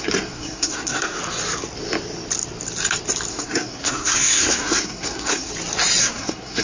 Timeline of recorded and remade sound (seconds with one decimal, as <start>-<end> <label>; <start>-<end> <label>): 0.0-1.2 remade; 1.2-3.3 recorded; 3.3-5.5 remade; 5.5-6.0 recorded; 6.0-6.6 remade